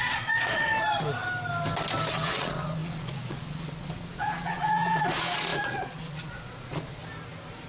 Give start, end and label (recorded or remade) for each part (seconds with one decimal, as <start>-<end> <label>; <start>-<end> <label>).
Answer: 0.0-0.7 remade; 0.7-2.1 recorded; 2.1-7.0 remade; 7.0-7.7 recorded